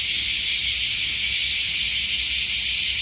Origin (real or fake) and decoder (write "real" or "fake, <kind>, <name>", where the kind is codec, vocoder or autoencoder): real